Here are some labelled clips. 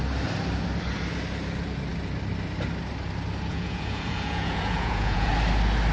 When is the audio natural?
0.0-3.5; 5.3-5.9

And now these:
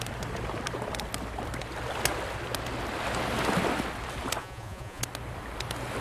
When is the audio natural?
0.0-4.4; 5.0-6.0

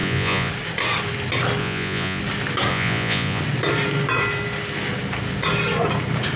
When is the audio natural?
0.5-1.6; 2.2-2.7; 3.4-6.4

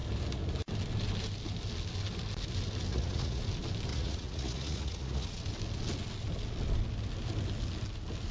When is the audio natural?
0.0-2.9; 3.4-3.9; 5.4-8.3

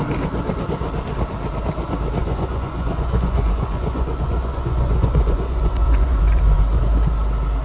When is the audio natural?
0.0-2.2; 6.8-7.6

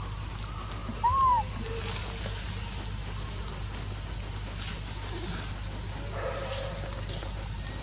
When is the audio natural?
0.0-7.8

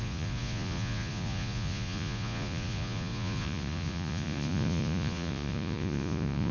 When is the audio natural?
none